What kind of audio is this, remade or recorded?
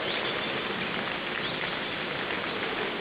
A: recorded